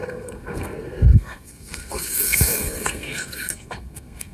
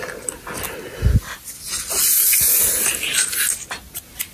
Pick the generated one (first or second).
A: first